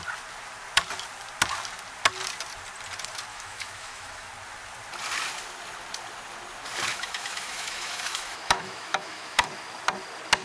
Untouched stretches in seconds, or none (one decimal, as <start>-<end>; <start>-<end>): 0.0-3.3; 4.3-6.9; 9.5-10.4